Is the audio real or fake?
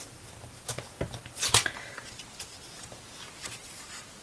real